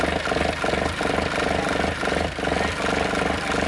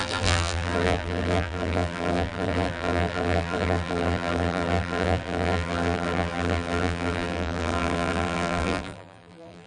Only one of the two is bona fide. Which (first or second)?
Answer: first